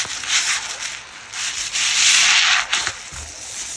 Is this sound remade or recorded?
recorded